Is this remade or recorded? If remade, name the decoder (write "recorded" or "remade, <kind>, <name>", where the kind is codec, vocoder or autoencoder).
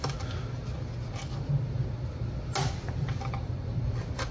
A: recorded